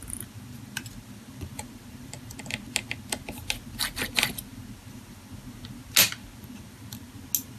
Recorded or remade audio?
recorded